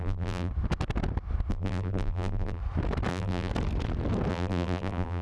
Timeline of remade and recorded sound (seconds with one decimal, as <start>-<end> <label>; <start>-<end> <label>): 0.0-0.5 remade; 0.5-1.5 recorded; 1.5-2.6 remade; 2.6-3.1 recorded; 3.1-3.5 remade; 3.5-4.3 recorded; 4.3-5.2 remade